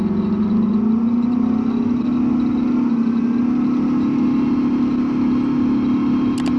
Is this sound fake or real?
real